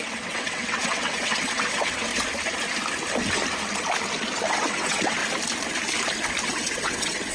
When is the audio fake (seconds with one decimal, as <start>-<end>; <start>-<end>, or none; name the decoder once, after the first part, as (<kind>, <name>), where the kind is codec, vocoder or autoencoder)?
0.0-2.1 (vocoder, WaveNeXt); 4.5-5.2; 6.4-7.3